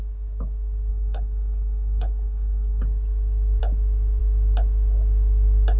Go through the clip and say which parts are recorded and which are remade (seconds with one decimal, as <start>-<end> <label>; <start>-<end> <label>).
0.0-0.9 recorded; 0.9-2.8 remade; 2.8-5.8 recorded